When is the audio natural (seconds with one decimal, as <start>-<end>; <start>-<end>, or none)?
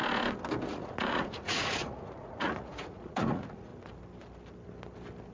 0.0-0.7; 3.7-5.3